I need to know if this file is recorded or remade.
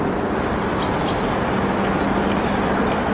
recorded